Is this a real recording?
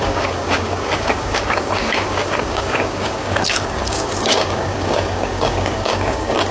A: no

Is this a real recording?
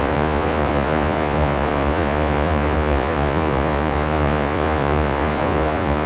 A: no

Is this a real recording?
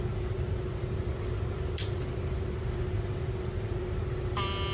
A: yes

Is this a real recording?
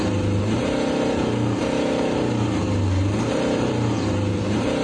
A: no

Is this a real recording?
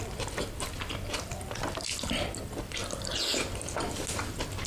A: yes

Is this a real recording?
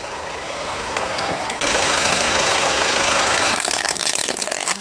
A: no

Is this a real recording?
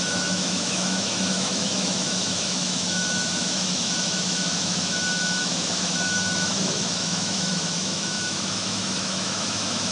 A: no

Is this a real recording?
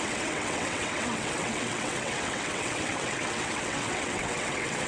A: no